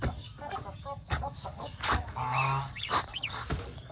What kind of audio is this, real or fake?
fake